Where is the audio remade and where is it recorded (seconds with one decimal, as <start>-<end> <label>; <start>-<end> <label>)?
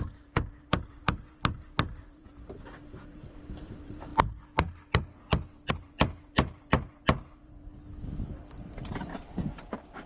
0.0-4.1 remade; 4.1-5.7 recorded; 5.7-7.7 remade; 7.7-8.4 recorded; 8.4-10.1 remade